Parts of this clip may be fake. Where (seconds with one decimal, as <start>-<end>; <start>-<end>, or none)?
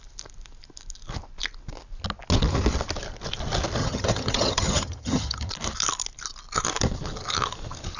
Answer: 3.8-5.5